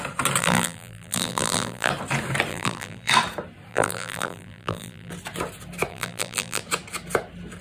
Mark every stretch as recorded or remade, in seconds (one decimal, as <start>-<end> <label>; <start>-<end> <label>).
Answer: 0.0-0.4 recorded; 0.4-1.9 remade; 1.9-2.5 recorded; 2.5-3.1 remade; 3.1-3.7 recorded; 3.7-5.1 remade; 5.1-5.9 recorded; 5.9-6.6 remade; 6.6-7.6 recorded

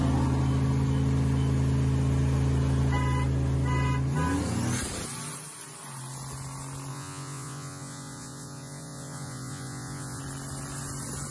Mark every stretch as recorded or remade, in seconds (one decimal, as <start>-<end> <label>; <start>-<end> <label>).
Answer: 0.0-6.9 recorded; 6.9-10.2 remade; 10.2-11.3 recorded

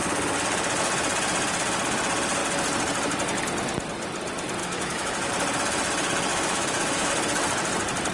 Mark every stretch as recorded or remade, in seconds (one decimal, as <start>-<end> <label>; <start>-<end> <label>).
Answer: 0.0-4.6 recorded; 4.6-5.3 remade; 5.3-6.3 recorded; 6.3-7.1 remade; 7.1-8.1 recorded

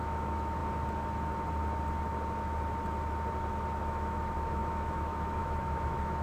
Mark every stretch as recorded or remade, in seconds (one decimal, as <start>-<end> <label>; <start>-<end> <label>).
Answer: 0.0-0.6 remade; 0.6-3.8 recorded; 3.8-6.2 remade